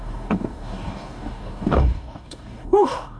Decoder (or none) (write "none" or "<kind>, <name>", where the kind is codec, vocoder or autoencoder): codec, DAC